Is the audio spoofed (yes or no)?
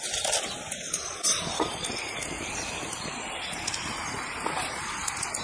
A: no